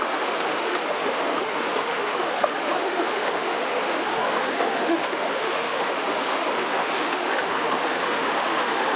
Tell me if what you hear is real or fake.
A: fake